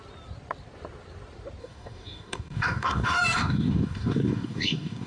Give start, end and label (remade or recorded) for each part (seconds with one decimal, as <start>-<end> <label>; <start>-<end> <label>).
0.0-1.6 recorded; 1.6-5.1 remade